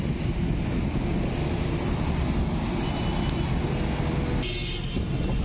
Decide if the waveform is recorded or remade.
recorded